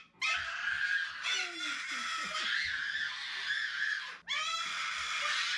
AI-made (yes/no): no